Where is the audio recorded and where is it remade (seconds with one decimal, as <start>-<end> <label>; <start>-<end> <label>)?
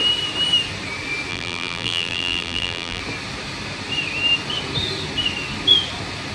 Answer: 0.0-1.3 recorded; 1.3-3.0 remade; 3.0-6.3 recorded